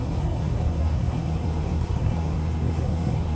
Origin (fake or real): fake